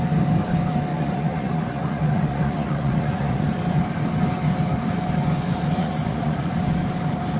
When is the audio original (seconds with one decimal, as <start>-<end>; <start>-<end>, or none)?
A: 0.0-0.9; 3.4-5.8; 6.5-7.4